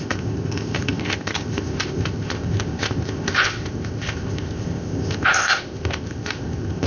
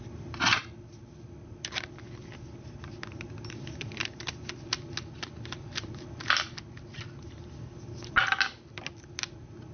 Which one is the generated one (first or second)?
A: first